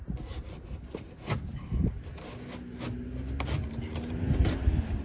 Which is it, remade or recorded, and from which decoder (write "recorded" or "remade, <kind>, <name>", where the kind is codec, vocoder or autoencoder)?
recorded